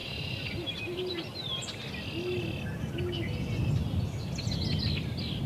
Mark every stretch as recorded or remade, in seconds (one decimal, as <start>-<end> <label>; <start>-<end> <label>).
0.0-5.5 recorded